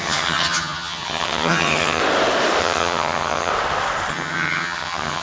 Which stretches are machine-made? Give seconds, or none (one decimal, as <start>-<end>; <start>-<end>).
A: 0.0-2.0; 2.6-3.5; 4.1-5.2